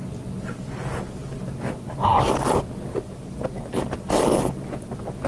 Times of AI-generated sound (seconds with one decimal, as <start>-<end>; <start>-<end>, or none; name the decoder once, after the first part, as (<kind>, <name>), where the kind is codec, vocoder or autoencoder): none